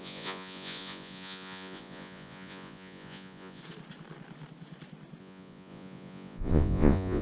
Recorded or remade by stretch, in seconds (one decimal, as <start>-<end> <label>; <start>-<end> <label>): 0.0-3.6 remade; 3.6-5.2 recorded; 5.2-7.2 remade